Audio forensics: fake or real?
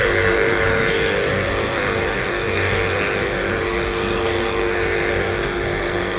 fake